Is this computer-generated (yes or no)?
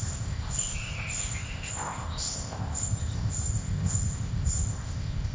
yes